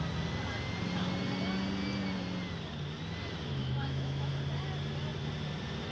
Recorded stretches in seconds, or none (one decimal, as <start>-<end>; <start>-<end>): 0.0-3.6; 4.3-5.9